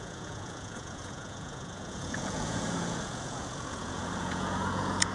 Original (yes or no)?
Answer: no